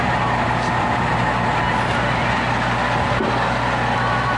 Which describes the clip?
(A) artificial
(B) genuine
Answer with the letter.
B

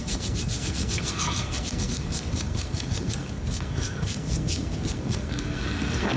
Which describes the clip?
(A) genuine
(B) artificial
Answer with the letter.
B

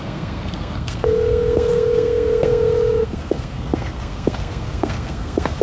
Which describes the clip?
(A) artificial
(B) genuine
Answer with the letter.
A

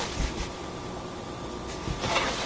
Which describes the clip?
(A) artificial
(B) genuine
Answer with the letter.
B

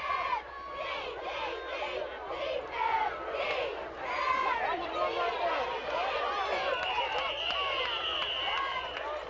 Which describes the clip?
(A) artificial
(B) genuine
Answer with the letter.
B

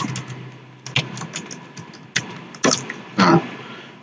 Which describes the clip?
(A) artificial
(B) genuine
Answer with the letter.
B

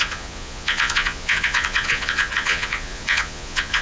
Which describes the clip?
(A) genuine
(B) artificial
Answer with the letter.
B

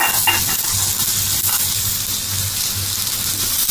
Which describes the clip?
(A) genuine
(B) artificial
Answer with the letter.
A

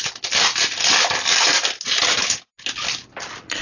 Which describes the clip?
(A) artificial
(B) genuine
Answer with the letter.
B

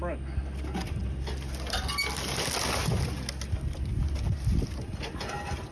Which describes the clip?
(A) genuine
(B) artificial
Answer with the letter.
A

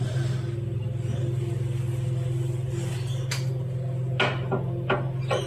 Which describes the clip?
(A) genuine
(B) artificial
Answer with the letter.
A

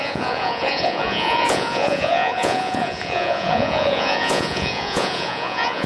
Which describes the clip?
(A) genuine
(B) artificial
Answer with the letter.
B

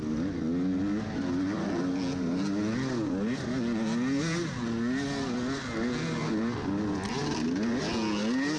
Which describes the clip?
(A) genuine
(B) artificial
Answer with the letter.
A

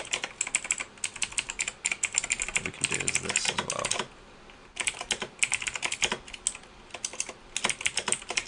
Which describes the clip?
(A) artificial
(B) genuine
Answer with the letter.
B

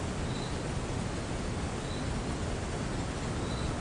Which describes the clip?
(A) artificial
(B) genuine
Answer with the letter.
B